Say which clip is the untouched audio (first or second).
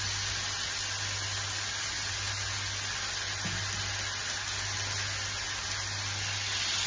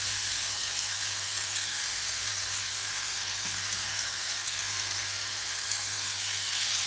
first